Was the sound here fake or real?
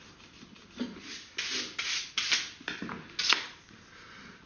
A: real